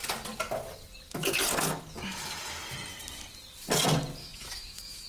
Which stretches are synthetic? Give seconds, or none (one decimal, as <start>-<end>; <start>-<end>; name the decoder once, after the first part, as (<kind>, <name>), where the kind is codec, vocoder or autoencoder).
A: 4.2-5.1 (autoencoder, DAC-VAE)